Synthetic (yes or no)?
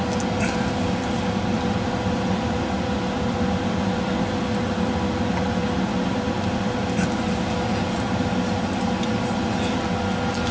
no